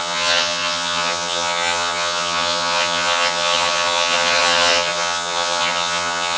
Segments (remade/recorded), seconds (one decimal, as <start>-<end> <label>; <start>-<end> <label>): 0.0-6.4 remade